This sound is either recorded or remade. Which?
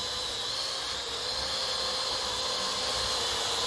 recorded